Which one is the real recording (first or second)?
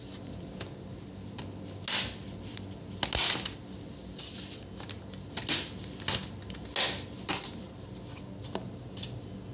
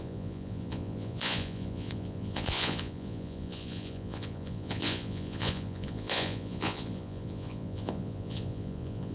first